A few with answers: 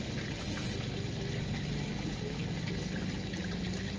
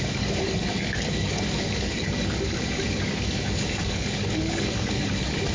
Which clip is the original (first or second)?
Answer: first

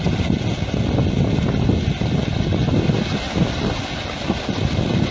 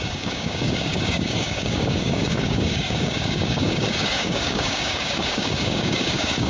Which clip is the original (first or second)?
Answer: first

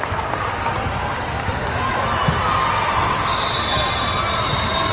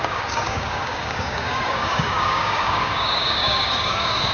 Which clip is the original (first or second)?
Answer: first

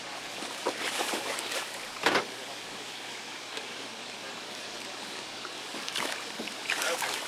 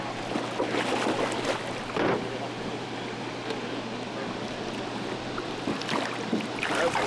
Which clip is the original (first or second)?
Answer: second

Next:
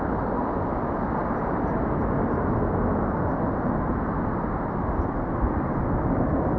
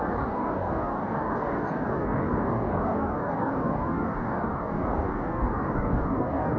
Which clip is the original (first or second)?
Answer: first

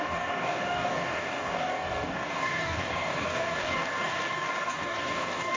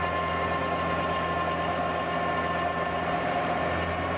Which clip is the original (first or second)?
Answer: second